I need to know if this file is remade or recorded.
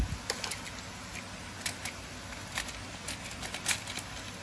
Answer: recorded